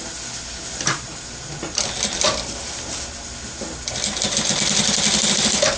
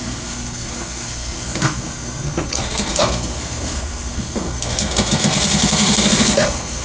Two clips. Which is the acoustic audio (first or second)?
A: first